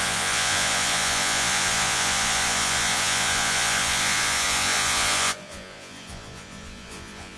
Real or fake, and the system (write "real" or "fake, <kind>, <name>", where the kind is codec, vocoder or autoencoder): fake, vocoder, Vocos